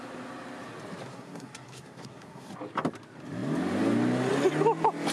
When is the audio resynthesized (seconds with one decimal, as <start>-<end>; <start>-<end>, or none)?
1.1-2.5